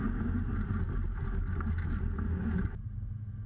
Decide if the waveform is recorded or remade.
recorded